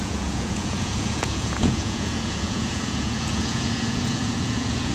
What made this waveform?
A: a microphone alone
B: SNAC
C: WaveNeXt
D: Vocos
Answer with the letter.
D